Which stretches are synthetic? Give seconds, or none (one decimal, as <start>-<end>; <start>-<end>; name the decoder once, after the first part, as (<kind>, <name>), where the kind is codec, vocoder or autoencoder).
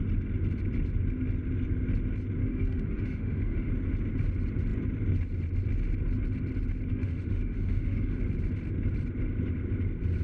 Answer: 2.4-3.7 (autoencoder, DAC-VAE); 6.9-8.2